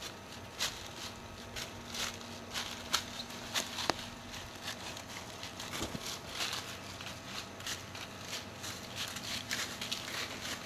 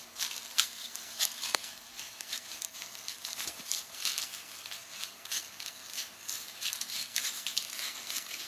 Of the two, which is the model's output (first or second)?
second